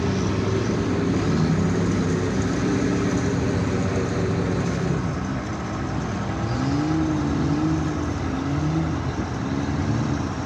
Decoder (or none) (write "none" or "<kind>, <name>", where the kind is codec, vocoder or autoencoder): none